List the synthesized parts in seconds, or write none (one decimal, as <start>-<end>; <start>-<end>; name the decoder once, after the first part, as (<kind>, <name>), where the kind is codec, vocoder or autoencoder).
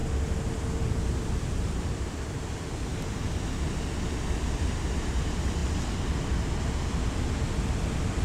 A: 0.0-2.9 (vocoder, BigVGAN v2); 4.4-5.6; 7.1-8.2